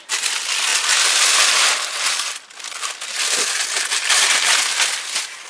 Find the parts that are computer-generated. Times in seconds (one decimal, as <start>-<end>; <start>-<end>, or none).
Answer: none